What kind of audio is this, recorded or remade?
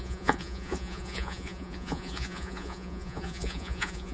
remade